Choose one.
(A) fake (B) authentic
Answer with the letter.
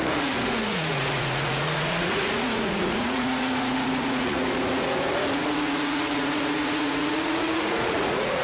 A